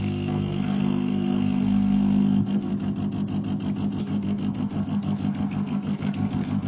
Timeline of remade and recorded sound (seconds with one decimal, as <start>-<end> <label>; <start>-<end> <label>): 0.0-2.7 remade; 2.7-4.0 recorded; 4.0-6.7 remade